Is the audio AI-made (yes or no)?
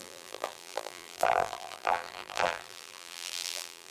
yes